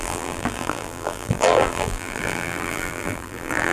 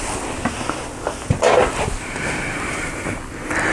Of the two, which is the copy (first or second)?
first